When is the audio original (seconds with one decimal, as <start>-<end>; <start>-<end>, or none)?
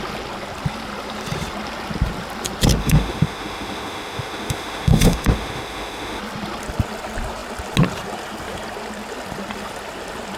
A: 0.0-2.8; 6.2-10.4